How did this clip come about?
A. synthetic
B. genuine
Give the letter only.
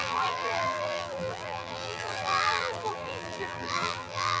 A